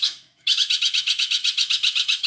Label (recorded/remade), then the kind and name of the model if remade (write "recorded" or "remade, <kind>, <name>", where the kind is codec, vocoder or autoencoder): remade, autoencoder, DAC-VAE